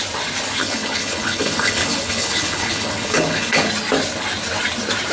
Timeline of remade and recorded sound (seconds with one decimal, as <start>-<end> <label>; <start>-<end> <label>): 0.0-0.6 recorded; 0.6-3.7 remade; 3.7-5.1 recorded